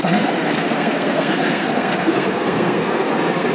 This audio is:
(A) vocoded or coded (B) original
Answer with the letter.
A